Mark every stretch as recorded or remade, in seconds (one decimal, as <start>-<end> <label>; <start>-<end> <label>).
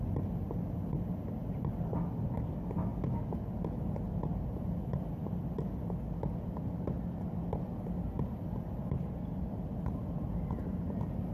0.0-11.3 recorded